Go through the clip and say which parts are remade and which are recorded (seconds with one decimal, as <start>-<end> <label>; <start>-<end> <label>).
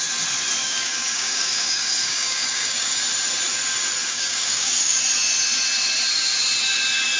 0.0-0.6 recorded; 0.6-3.0 remade; 3.0-4.0 recorded; 4.0-5.0 remade; 5.0-7.2 recorded